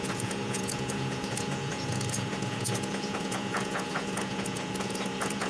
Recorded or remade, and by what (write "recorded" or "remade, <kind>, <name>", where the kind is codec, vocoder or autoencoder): remade, vocoder, Vocos